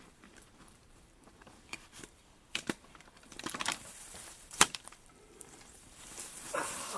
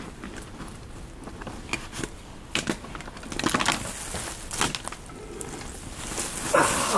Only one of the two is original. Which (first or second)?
second